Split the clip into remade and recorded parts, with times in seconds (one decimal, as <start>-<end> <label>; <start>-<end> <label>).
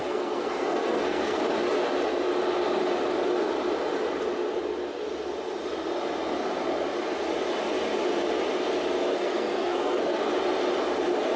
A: 0.0-1.4 remade; 1.4-9.1 recorded; 9.1-10.2 remade; 10.2-11.4 recorded